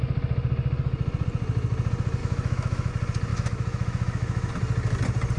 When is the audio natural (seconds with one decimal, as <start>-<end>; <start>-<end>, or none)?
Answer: 0.0-2.2; 2.9-3.3; 4.5-5.4